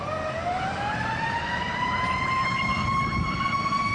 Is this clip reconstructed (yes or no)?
yes